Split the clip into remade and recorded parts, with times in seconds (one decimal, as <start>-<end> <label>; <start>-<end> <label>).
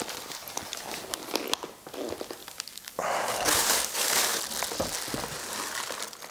0.0-2.4 recorded; 2.4-4.4 remade; 4.4-6.3 recorded